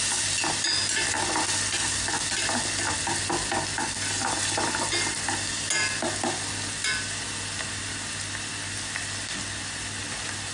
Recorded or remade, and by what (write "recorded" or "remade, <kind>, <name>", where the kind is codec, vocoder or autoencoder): recorded